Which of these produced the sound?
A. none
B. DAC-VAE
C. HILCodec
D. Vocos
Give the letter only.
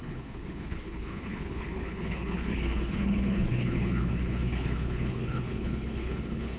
C